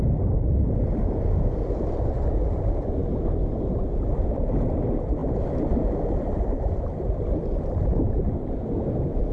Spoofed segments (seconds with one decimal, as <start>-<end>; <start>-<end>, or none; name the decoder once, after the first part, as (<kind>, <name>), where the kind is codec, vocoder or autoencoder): none